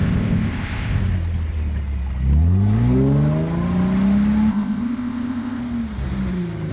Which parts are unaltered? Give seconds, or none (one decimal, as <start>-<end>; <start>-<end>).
1.0-4.5; 5.6-6.7